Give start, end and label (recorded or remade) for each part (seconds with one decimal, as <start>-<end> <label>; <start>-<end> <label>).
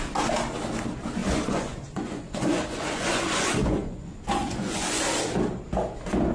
0.0-1.2 recorded; 1.2-5.0 remade; 5.0-6.3 recorded